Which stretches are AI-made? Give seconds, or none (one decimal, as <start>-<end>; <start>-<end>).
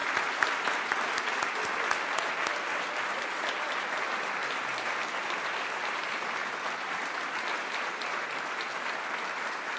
none